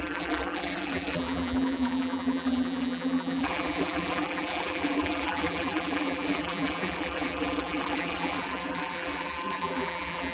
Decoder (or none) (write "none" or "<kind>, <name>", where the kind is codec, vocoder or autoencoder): vocoder, BigVGAN v2